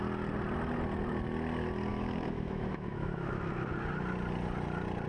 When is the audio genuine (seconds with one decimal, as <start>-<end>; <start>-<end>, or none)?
0.0-1.9; 3.4-5.1